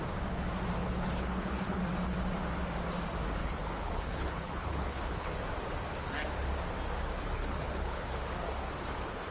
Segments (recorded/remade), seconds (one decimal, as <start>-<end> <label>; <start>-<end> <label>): 0.0-0.8 recorded; 0.8-1.8 remade; 1.8-3.4 recorded; 3.4-5.3 remade; 5.3-7.4 recorded; 7.4-8.1 remade; 8.1-9.3 recorded